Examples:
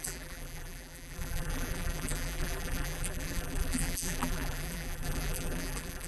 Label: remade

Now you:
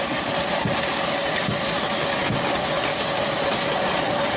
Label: recorded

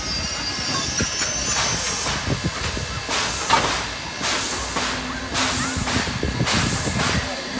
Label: recorded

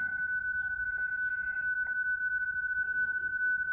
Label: recorded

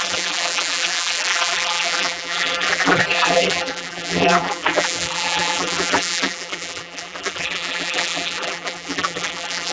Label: remade